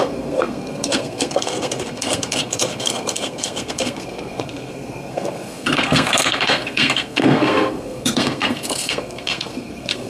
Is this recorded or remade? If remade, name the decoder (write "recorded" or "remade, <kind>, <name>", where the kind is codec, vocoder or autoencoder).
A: remade, codec, SNAC